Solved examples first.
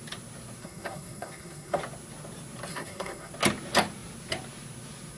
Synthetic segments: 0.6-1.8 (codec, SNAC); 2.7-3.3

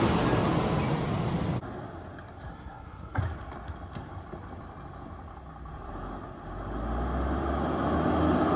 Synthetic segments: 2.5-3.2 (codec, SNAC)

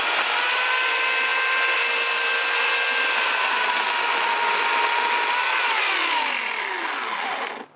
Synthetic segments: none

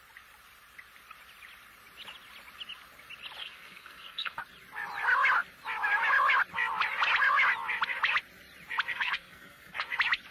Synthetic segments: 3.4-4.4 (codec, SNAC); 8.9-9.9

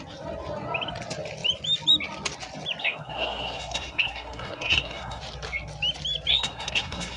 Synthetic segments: 2.8-5.2 (codec, SNAC); 6.3-7.2

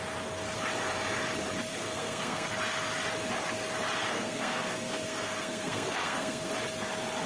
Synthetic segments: 1.7-2.5 (codec, SNAC); 4.1-6.5

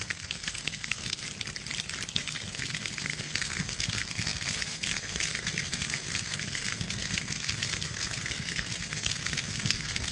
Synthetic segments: 0.0-1.2 (codec, SNAC); 2.2-10.1

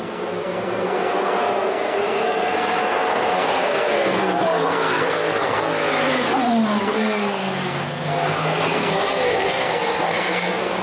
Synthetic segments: 0.0-5.7 (codec, SNAC); 6.8-10.8